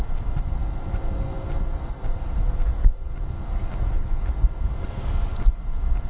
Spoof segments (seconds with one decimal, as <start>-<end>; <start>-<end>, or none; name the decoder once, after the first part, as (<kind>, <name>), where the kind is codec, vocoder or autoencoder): none